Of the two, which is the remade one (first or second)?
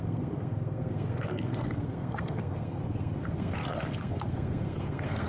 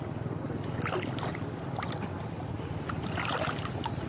first